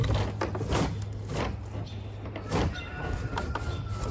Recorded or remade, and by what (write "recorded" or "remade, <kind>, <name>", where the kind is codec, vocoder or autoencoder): recorded